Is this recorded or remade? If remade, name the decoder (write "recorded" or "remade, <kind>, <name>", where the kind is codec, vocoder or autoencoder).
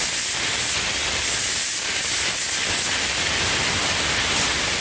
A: recorded